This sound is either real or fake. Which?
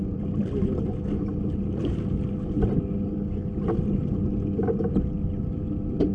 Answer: real